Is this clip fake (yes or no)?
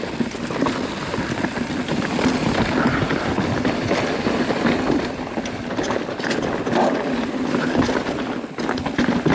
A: no